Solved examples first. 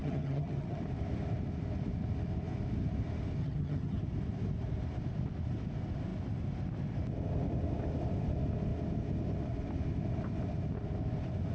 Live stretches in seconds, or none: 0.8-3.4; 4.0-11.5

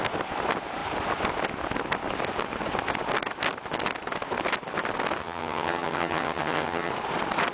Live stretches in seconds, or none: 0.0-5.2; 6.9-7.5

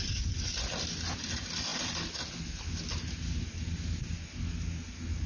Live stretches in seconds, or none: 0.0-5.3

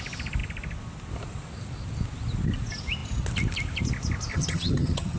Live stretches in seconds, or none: 0.0-4.3